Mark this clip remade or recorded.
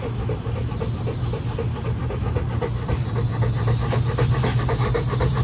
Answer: recorded